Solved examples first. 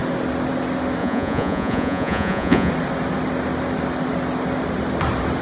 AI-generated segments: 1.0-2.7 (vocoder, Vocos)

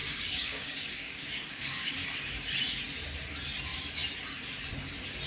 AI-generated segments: 0.0-1.9 (codec, DAC)

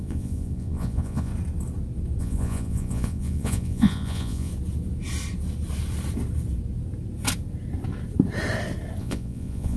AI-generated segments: 0.0-1.3 (vocoder, Vocos); 2.2-4.5; 9.0-9.8

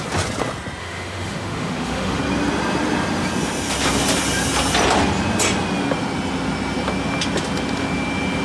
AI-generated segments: 0.8-2.2 (autoencoder, DAC-VAE)

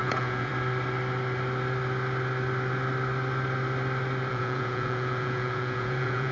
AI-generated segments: 0.0-0.5 (vocoder, Vocos); 4.3-6.3

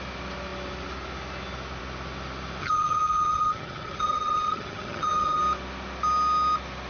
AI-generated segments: 2.6-5.4 (vocoder, HiFi-GAN)

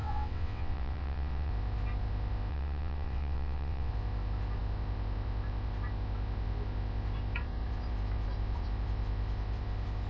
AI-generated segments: 0.0-1.5 (vocoder, WaveNeXt); 2.5-3.9

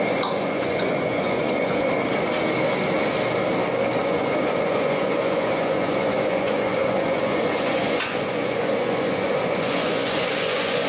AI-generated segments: 0.0-1.9 (vocoder, Vocos); 4.0-10.9